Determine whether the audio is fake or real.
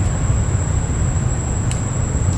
real